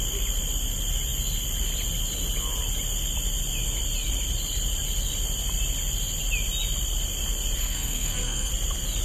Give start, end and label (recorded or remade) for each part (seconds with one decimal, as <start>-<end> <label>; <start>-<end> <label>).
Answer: 0.0-7.6 recorded; 7.6-8.5 remade; 8.5-9.0 recorded